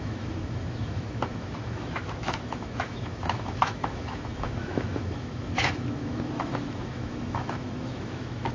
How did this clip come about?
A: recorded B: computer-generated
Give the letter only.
B